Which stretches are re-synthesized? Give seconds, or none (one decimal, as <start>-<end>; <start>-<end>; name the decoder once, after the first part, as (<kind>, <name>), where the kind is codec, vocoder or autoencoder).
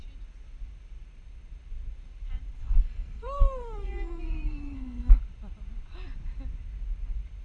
2.6-5.1 (codec, SNAC)